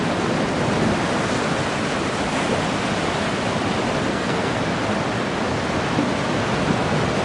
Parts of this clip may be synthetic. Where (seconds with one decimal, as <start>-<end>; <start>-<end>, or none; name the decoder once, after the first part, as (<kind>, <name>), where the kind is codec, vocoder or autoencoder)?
4.1-4.6 (codec, SNAC)